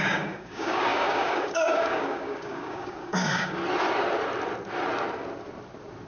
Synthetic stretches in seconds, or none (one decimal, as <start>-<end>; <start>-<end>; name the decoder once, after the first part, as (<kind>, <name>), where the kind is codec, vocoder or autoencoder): 0.0-3.6 (codec, DAC)

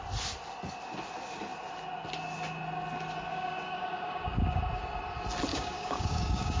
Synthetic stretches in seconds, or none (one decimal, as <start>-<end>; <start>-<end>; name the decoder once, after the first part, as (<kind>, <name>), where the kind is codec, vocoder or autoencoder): 3.3-4.6 (codec, DAC); 5.5-6.6